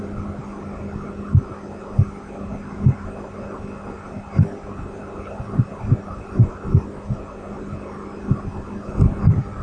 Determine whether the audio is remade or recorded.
recorded